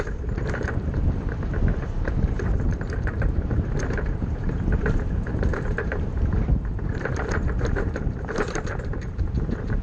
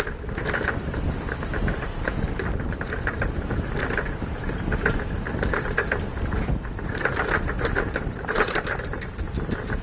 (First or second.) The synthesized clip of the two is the first